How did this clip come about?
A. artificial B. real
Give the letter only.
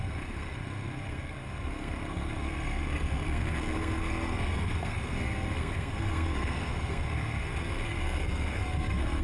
A